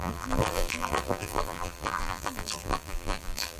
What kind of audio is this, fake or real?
fake